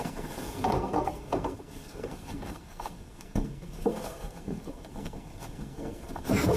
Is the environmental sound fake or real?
fake